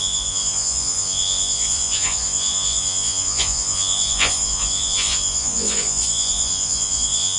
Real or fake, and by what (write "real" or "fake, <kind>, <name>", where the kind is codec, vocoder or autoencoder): fake, vocoder, Vocos